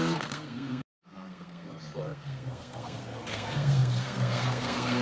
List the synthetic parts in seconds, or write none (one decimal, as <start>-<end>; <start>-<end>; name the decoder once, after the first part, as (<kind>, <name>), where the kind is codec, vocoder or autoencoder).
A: 0.0-5.0 (codec, SNAC)